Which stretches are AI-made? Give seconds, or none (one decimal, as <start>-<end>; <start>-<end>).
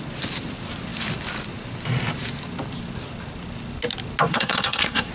4.3-5.1